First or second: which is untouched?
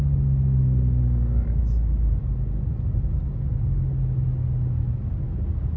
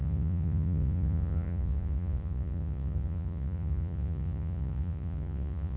first